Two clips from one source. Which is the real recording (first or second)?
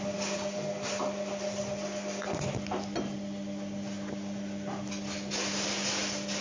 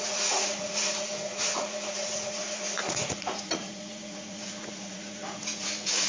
first